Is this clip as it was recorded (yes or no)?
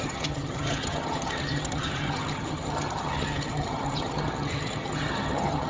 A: no